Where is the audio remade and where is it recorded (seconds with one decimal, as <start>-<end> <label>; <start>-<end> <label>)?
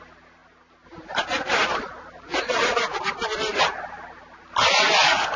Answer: 0.0-5.4 recorded